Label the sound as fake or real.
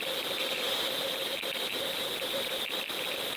real